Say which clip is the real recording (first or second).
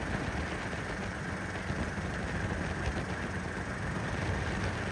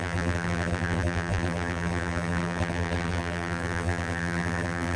first